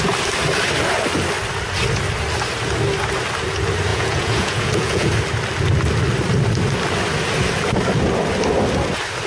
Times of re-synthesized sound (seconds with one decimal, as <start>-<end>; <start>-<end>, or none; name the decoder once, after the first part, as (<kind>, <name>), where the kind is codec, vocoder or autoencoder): 3.9-5.1 (vocoder, Vocos)